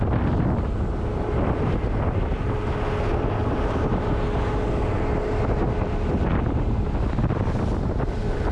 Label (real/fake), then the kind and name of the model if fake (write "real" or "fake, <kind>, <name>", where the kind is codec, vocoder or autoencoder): real